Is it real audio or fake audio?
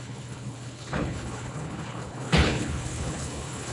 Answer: fake